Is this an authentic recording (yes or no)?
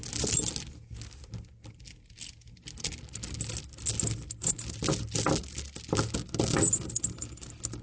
yes